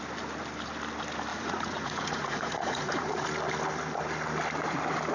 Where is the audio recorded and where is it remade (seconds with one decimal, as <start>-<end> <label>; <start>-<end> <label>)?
0.0-1.3 recorded; 1.3-3.2 remade; 3.2-5.1 recorded